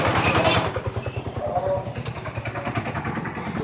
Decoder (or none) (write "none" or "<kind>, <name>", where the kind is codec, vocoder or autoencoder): none